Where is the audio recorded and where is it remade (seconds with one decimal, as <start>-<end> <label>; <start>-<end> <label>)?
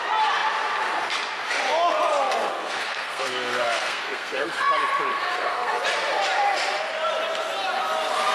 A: 0.0-2.1 recorded; 2.1-4.6 remade; 4.6-5.1 recorded; 5.1-5.7 remade; 5.7-8.3 recorded